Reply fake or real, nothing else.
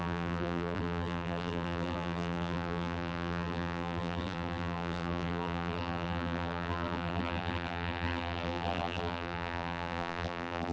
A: fake